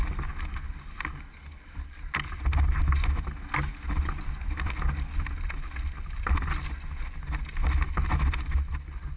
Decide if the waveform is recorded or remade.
recorded